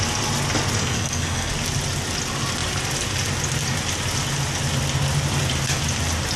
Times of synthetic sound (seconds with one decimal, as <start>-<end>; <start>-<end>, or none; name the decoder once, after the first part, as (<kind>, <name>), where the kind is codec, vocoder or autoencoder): 0.8-1.5 (codec, SNAC)